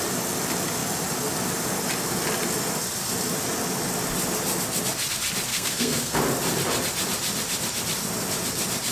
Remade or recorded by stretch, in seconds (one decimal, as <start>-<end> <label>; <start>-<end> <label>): 0.0-5.5 recorded; 5.5-6.2 remade; 6.2-8.9 recorded